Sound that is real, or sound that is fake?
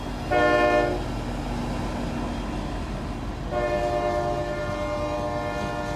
real